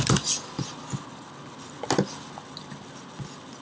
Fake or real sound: real